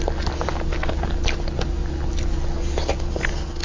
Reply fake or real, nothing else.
real